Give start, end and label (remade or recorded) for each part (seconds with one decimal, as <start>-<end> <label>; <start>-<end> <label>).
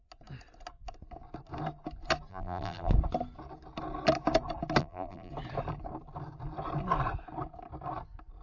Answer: 0.0-2.3 recorded; 2.3-2.9 remade; 2.9-4.8 recorded; 4.8-5.3 remade; 5.3-8.4 recorded